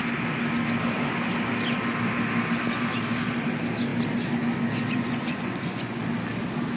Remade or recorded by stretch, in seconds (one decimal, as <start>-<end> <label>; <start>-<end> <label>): 0.0-4.9 recorded; 4.9-6.0 remade; 6.0-6.8 recorded